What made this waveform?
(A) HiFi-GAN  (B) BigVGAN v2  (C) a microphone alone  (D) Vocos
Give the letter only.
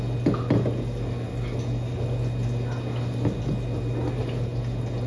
C